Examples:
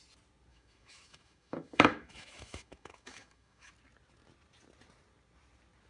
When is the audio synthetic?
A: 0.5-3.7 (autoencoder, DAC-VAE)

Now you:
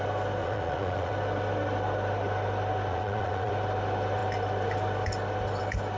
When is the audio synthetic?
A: 0.4-1.1 (vocoder, Vocos); 2.9-3.5

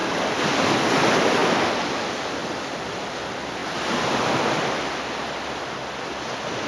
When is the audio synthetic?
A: none

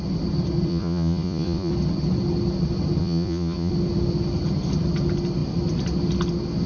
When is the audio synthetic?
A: 0.7-1.7 (vocoder, Vocos); 3.0-3.7

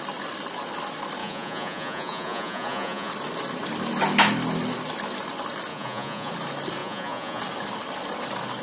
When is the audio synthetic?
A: 1.2-3.1 (vocoder, Vocos); 5.7-6.3; 6.8-7.4

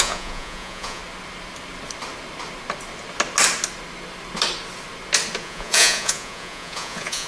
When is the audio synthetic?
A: 0.0-1.0 (vocoder, Vocos); 5.4-7.3

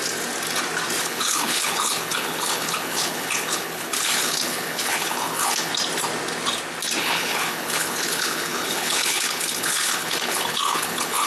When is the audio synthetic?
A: 1.0-5.7 (codec, HILCodec); 7.0-11.3